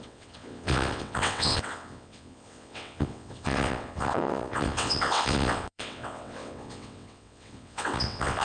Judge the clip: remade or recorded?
remade